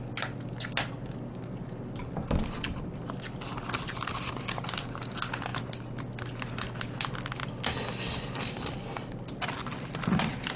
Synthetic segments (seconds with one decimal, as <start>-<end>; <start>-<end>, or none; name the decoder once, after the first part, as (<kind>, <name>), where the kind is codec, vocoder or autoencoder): none